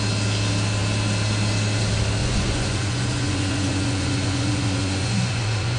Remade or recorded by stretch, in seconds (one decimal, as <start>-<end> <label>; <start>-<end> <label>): 0.0-2.2 recorded; 2.2-5.8 remade